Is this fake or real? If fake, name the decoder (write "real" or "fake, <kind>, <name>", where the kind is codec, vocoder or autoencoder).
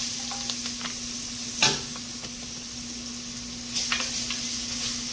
real